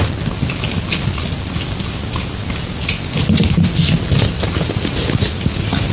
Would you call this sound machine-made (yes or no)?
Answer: no